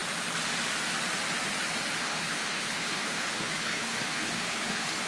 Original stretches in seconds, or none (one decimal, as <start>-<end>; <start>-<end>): 0.0-2.0